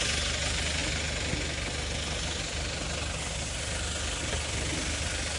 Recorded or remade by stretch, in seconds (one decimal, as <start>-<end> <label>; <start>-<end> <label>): 0.0-5.4 recorded